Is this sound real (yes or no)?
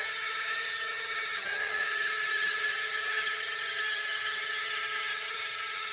no